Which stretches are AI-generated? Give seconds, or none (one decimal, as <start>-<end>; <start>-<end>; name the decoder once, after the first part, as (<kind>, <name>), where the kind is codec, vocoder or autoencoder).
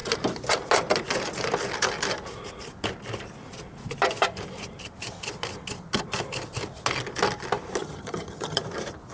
7.8-8.6 (vocoder, HiFi-GAN)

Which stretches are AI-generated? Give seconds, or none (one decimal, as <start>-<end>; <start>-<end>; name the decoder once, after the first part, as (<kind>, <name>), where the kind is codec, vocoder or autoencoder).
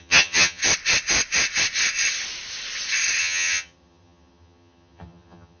0.0-0.6 (vocoder, HiFi-GAN); 3.2-5.6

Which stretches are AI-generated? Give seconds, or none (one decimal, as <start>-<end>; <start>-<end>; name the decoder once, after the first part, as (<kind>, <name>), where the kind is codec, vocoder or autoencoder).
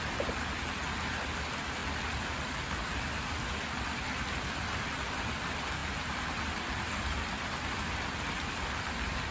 none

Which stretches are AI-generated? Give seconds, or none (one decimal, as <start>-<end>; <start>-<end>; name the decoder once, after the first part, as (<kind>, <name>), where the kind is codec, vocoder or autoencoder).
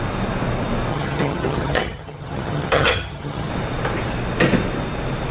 0.9-3.5 (vocoder, HiFi-GAN)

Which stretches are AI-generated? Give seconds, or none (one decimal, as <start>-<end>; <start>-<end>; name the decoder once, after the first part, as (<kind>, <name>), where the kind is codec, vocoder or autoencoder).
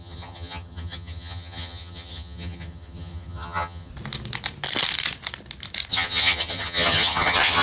0.0-3.9 (vocoder, HiFi-GAN); 5.9-7.6